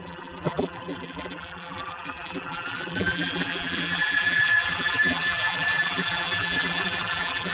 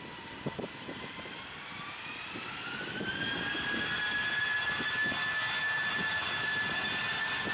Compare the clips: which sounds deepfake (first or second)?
first